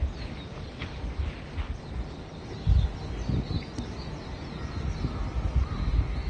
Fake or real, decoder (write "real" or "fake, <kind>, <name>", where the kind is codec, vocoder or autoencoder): real